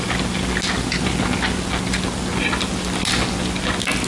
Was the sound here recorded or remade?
recorded